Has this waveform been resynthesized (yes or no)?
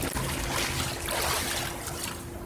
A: no